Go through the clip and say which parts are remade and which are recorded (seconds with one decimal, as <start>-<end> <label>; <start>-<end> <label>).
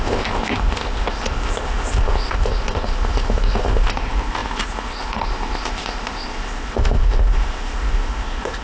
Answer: 0.0-8.6 remade